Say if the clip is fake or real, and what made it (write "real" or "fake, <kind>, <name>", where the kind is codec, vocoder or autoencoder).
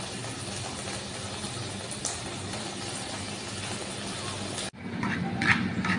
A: real